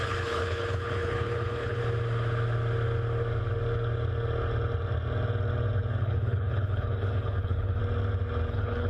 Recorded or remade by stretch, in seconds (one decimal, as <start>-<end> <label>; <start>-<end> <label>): 0.0-1.8 remade; 1.8-6.0 recorded; 6.0-7.8 remade; 7.8-8.5 recorded; 8.5-8.9 remade